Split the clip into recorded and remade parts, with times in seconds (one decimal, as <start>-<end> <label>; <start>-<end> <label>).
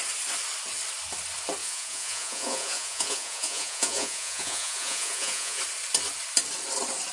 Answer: 0.0-1.6 recorded; 1.6-5.6 remade; 5.6-7.1 recorded